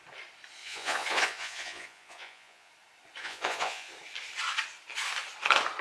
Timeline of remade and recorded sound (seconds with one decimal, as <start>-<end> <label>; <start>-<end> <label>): 0.0-0.6 recorded; 0.6-2.7 remade; 2.7-3.2 recorded; 3.2-3.9 remade; 3.9-5.8 recorded